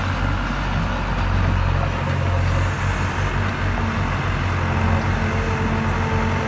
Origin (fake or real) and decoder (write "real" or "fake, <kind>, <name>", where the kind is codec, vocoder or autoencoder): real